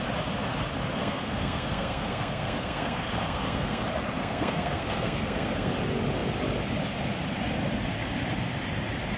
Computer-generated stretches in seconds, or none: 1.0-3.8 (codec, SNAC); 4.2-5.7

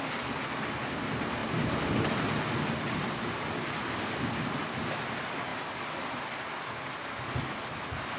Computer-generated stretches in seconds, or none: 1.4-2.4 (vocoder, BigVGAN v2)